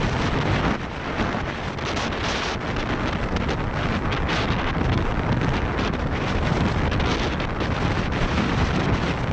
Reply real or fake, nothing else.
real